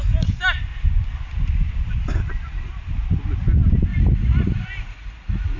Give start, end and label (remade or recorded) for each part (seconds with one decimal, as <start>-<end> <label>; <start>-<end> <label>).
0.0-3.9 recorded; 3.9-5.6 remade